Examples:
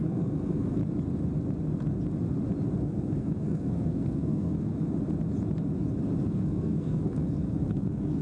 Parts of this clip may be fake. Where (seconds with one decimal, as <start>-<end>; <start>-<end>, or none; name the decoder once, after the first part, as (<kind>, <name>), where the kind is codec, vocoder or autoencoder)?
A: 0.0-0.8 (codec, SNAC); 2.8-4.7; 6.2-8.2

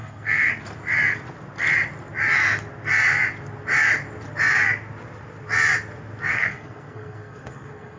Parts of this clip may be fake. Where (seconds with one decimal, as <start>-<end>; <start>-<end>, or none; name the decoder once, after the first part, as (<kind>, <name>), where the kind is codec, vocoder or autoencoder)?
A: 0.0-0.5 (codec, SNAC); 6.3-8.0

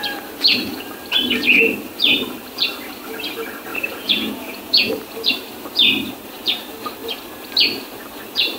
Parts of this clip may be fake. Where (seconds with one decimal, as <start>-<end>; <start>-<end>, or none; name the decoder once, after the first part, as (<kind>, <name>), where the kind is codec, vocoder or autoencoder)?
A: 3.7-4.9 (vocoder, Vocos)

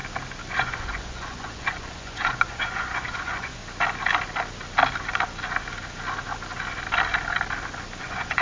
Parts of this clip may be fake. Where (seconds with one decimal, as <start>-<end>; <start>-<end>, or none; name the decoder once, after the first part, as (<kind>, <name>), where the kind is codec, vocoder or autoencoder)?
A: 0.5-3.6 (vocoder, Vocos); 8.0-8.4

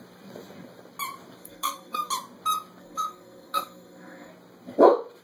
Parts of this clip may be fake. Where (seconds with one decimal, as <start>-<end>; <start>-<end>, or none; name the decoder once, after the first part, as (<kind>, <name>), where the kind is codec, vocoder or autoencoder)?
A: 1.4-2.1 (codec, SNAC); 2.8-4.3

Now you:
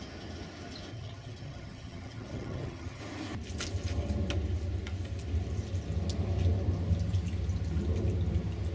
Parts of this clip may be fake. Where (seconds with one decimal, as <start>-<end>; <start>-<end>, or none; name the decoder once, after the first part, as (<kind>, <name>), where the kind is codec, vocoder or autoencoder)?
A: 0.9-3.0 (vocoder, HiFi-GAN)

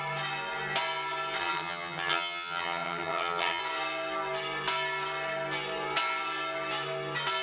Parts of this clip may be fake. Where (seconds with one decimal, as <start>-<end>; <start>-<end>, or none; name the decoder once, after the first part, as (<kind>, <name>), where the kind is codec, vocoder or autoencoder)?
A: 1.4-3.6 (vocoder, HiFi-GAN)

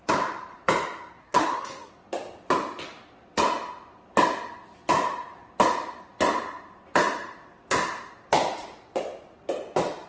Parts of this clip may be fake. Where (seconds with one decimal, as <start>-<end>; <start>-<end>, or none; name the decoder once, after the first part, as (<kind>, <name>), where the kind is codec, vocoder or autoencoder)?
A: 1.2-1.9 (codec, SNAC)